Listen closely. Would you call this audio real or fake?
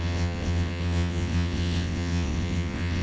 fake